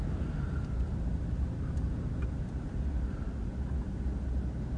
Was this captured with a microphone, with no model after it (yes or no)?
yes